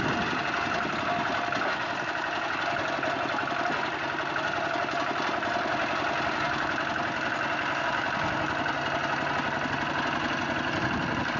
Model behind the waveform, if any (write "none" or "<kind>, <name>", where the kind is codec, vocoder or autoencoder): none